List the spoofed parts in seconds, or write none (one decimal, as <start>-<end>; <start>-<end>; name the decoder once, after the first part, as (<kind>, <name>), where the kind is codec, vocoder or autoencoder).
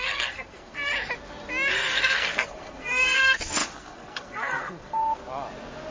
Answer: 0.0-0.9 (codec, SNAC); 1.7-5.2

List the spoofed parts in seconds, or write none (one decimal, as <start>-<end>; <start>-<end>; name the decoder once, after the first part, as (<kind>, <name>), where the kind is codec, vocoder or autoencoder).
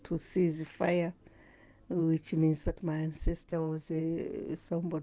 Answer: 3.5-4.0 (codec, SNAC)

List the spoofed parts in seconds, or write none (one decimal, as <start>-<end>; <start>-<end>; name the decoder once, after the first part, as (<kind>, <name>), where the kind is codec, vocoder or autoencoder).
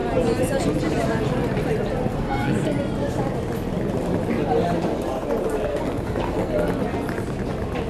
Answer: 2.1-2.7 (codec, SNAC); 5.7-6.5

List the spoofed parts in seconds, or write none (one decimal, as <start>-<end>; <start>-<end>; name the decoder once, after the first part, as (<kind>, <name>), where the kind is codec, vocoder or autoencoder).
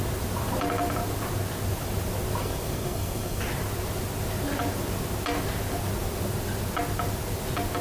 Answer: 2.4-3.4 (codec, SNAC)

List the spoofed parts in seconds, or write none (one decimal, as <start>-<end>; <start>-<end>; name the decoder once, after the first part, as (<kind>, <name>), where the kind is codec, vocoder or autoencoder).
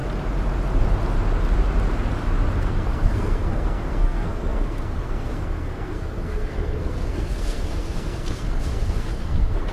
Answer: 2.6-9.7 (codec, SNAC)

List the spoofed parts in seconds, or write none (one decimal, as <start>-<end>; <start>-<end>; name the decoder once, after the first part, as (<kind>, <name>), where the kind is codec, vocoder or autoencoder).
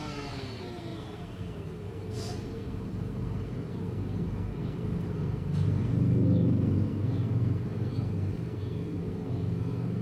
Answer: 0.0-10.0 (codec, SNAC)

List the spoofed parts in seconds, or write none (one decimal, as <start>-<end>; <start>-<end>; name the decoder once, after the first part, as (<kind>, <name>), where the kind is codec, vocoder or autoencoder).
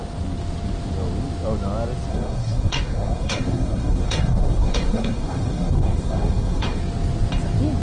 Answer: 2.1-6.8 (codec, SNAC)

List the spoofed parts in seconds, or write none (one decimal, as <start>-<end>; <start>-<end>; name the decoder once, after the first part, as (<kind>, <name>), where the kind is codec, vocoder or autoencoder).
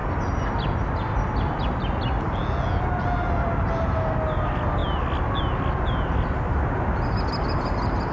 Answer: none